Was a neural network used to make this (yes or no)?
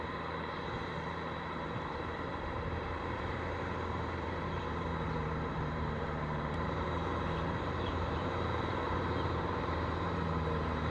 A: yes